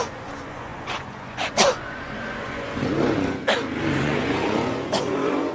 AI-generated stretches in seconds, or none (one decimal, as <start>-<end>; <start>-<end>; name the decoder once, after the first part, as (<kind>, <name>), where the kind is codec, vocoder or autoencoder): 0.0-3.4 (vocoder, Vocos); 4.0-5.5